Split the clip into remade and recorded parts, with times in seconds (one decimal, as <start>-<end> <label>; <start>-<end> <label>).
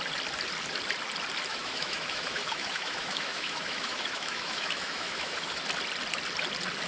0.0-1.5 recorded; 1.5-5.6 remade; 5.6-6.9 recorded